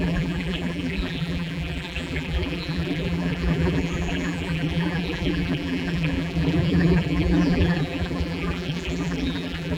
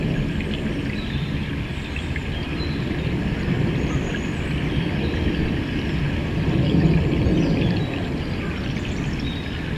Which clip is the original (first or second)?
second